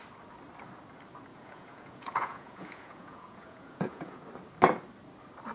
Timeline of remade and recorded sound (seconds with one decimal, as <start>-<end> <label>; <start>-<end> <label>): 0.0-1.3 recorded; 1.3-4.2 remade; 4.2-5.5 recorded